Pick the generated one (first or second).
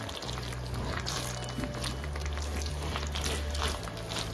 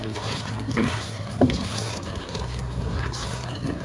second